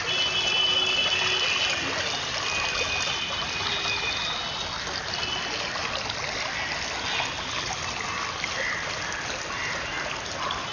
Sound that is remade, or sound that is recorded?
recorded